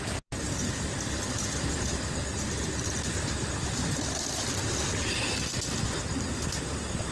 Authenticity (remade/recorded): recorded